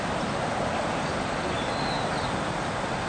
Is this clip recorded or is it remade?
recorded